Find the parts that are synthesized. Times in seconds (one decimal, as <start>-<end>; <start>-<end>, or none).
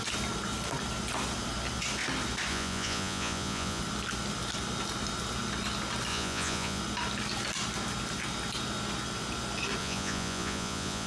2.5-3.8; 6.1-6.8; 9.8-11.1